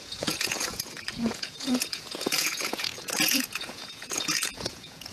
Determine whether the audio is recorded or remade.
remade